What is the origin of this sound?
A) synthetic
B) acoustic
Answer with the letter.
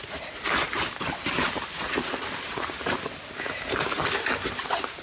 B